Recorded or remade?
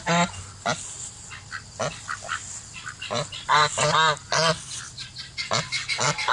recorded